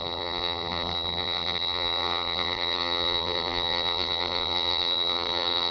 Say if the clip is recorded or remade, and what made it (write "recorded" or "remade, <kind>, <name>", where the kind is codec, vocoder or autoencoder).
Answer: remade, vocoder, BigVGAN v2